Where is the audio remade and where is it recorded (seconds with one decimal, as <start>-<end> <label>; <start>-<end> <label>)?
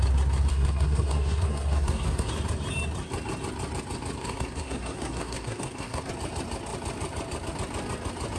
0.0-0.5 recorded; 0.5-2.3 remade; 2.3-4.2 recorded; 4.2-6.1 remade; 6.1-8.4 recorded